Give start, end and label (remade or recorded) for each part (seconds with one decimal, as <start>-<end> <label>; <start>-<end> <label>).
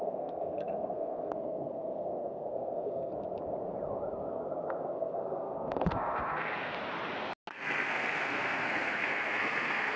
0.0-3.1 remade; 3.1-4.3 recorded; 4.3-6.7 remade; 6.7-7.5 recorded; 7.5-10.0 remade